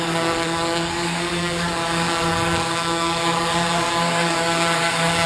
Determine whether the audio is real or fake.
fake